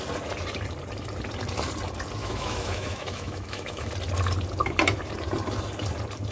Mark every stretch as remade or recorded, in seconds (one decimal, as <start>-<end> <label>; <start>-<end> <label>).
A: 0.0-2.2 recorded; 2.2-3.9 remade; 3.9-6.3 recorded